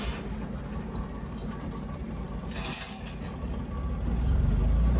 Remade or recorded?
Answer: recorded